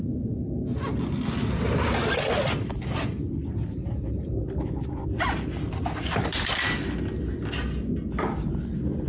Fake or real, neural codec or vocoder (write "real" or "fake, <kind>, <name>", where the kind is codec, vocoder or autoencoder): real